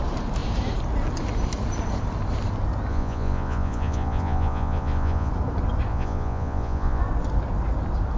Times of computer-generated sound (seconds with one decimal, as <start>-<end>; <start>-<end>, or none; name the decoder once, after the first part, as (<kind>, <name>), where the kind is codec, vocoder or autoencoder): 2.9-5.3 (vocoder, Vocos); 5.9-7.0